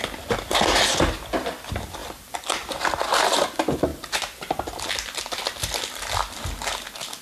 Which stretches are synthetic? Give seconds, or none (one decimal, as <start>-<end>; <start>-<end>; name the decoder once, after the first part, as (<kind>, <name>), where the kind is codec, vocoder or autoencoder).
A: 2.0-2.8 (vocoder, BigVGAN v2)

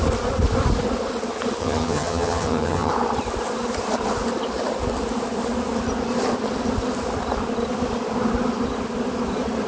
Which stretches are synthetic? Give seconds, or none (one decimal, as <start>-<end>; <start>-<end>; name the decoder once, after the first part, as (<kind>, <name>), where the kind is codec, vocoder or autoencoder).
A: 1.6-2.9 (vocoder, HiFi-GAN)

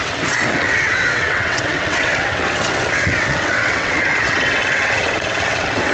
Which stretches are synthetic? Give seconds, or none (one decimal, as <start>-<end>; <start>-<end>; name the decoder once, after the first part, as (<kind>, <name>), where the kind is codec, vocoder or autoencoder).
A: 0.0-5.9 (vocoder, WaveNeXt)

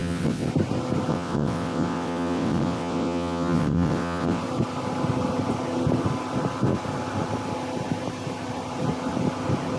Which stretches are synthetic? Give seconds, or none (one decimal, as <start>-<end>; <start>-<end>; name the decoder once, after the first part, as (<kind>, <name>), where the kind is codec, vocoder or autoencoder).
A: 0.0-0.5 (vocoder, WaveNeXt); 1.1-4.4

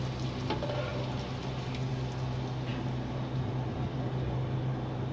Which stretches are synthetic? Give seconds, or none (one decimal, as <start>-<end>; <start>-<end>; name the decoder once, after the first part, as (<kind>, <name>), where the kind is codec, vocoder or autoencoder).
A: none